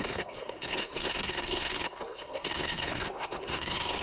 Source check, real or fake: fake